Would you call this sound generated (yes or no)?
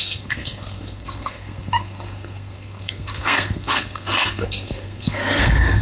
yes